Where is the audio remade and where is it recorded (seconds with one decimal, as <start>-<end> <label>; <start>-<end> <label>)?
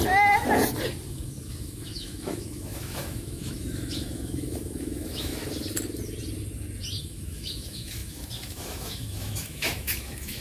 0.0-1.1 recorded; 1.1-5.3 remade; 5.3-7.0 recorded; 7.0-10.4 remade